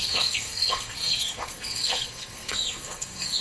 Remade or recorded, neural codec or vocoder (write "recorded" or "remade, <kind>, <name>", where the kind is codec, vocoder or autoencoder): remade, codec, SNAC